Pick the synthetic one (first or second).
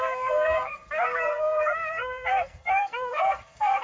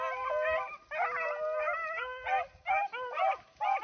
first